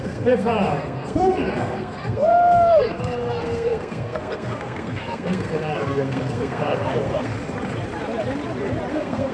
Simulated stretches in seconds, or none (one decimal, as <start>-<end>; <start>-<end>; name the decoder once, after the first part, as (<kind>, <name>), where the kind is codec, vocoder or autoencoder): 0.0-7.3 (codec, SNAC); 8.9-9.3